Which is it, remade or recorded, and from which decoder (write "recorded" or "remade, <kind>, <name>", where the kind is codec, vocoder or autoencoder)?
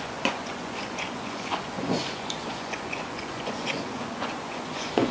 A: remade, vocoder, Vocos